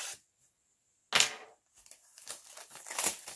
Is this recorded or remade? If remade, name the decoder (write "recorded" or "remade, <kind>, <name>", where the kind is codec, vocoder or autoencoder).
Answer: recorded